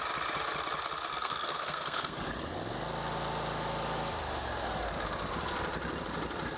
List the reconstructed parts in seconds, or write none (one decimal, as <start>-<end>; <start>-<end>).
1.1-2.2